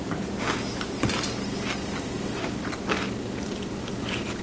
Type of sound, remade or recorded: recorded